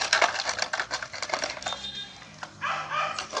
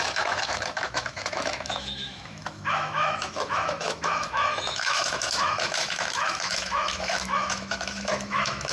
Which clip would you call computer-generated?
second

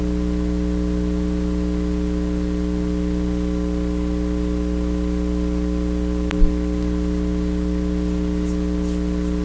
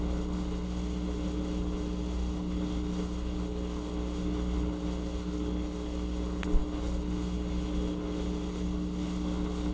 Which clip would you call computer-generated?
second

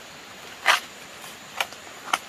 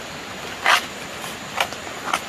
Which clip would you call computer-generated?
first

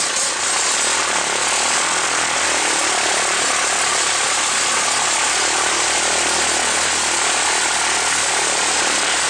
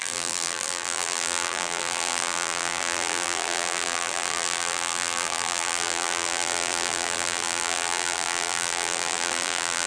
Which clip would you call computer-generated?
second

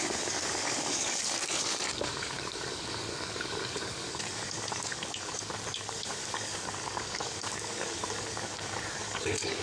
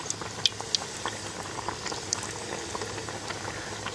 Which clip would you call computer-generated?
first